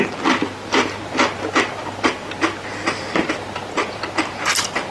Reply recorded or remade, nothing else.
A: recorded